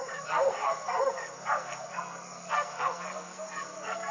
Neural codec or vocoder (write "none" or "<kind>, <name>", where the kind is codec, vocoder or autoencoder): codec, SNAC